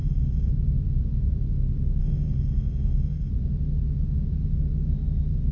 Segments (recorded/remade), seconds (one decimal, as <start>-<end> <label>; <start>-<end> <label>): 0.0-0.5 remade; 0.5-2.0 recorded; 2.0-3.3 remade; 3.3-5.5 recorded